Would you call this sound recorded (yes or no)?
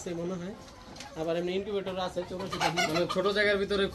yes